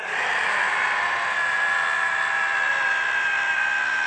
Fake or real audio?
fake